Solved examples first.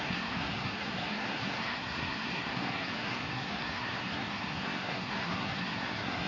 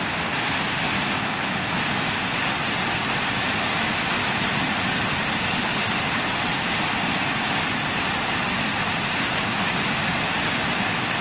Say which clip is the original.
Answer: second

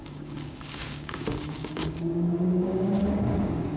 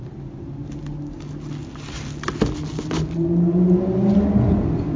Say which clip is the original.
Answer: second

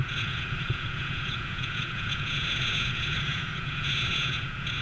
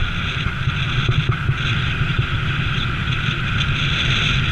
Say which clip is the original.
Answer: second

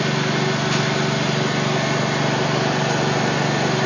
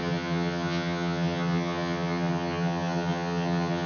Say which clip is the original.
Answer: first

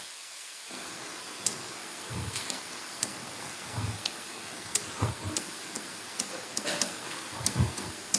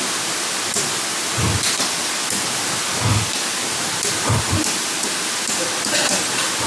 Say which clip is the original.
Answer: second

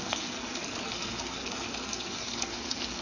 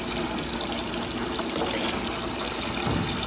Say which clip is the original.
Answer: second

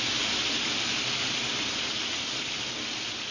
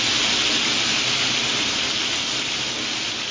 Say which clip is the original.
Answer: second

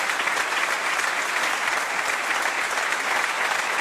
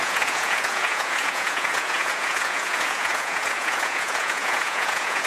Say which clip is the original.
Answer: first